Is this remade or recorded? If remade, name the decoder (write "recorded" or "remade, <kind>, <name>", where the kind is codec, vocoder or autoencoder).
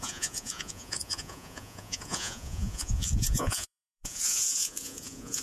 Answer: remade, vocoder, Vocos